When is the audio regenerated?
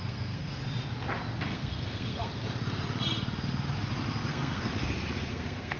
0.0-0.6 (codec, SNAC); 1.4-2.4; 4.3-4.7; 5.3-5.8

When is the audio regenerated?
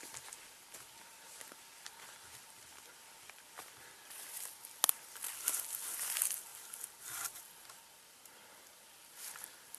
none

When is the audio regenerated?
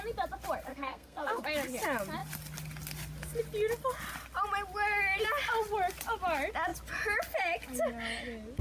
0.7-1.4 (codec, SNAC)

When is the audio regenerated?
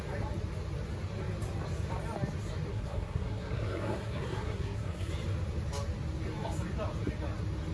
2.7-5.1 (codec, SNAC)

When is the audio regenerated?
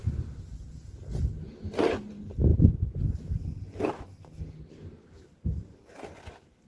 none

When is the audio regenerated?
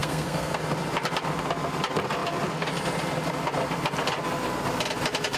0.0-0.6 (codec, SNAC)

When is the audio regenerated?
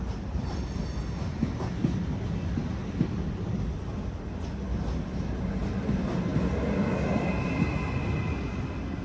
none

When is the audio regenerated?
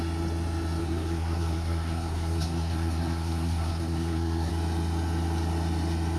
0.8-4.5 (codec, SNAC)